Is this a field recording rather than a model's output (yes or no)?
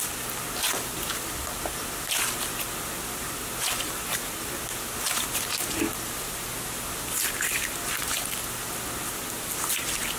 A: yes